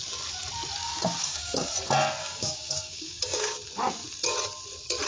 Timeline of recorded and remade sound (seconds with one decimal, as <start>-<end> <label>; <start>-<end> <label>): 0.0-0.8 recorded; 0.8-1.7 remade; 1.7-2.2 recorded; 2.2-3.6 remade; 3.6-5.1 recorded